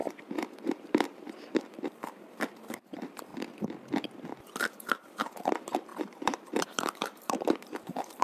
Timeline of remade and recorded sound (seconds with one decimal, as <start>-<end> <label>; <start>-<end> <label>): 0.0-3.3 remade; 3.3-4.7 recorded; 4.7-8.2 remade